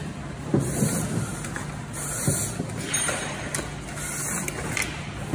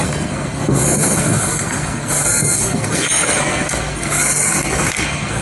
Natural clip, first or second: first